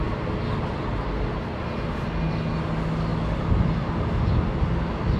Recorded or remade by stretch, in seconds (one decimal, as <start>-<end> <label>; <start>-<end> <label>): 0.0-5.2 recorded